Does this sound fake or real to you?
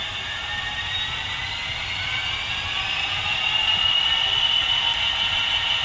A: real